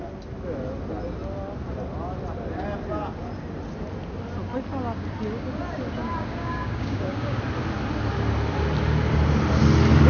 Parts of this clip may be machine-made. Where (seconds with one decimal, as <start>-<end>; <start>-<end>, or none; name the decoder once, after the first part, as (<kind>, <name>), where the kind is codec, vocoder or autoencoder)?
6.4-7.4 (codec, DAC)